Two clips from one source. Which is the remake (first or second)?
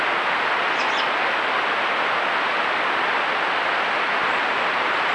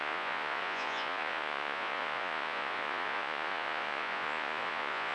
second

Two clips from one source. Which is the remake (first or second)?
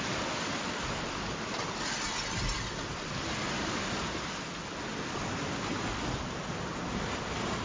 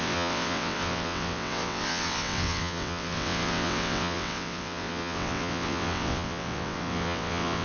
second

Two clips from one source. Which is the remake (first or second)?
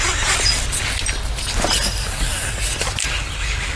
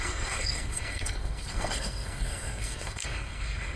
second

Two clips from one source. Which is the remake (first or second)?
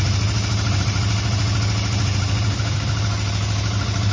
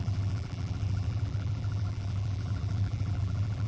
second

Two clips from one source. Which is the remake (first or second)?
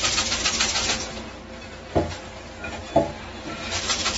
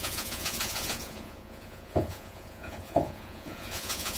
second